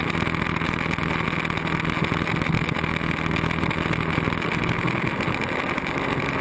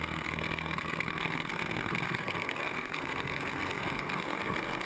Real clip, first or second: first